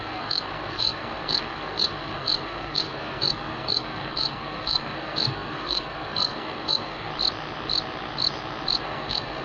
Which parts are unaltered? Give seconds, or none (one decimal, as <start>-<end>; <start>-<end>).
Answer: 7.1-8.8